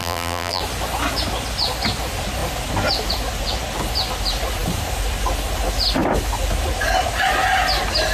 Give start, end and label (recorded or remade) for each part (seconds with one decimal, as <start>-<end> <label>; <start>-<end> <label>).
0.0-0.6 remade; 0.6-8.1 recorded

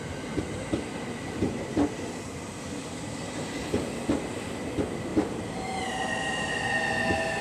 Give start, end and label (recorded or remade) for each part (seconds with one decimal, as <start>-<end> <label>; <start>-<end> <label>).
0.0-5.1 recorded; 5.1-6.5 remade; 6.5-7.4 recorded

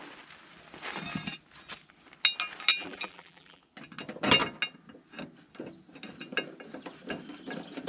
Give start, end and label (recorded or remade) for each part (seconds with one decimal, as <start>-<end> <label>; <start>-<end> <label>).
0.0-2.7 recorded; 2.7-3.6 remade; 3.6-7.9 recorded

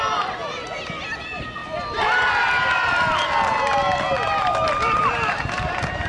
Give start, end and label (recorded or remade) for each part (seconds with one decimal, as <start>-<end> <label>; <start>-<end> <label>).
0.0-1.6 remade; 1.6-5.3 recorded; 5.3-6.1 remade